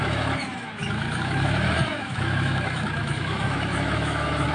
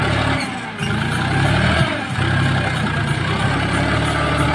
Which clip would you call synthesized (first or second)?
first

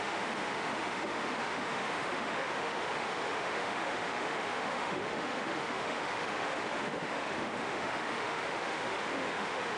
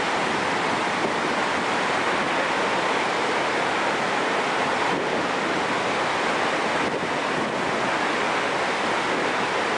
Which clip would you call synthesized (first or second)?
first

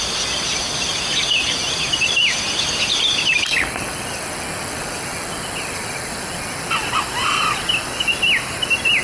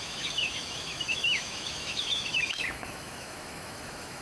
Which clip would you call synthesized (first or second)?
second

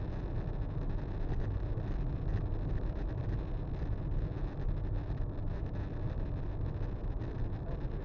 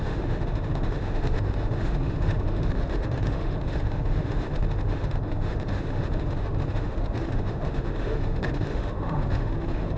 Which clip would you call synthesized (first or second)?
second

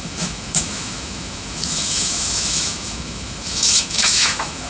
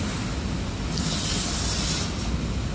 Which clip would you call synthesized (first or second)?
first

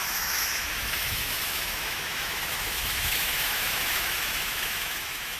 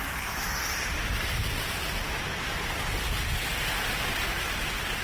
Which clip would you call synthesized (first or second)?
first